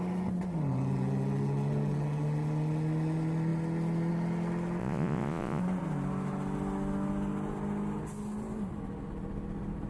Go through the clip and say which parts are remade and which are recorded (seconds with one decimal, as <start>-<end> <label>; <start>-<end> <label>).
0.0-4.8 recorded; 4.8-5.6 remade; 5.6-9.9 recorded